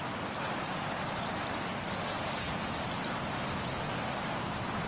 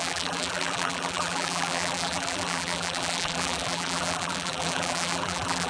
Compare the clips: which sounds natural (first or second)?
first